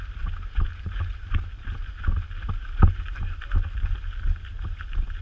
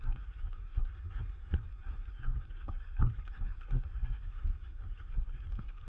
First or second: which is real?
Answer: first